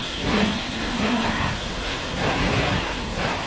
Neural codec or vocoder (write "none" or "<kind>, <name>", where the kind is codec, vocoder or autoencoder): codec, SNAC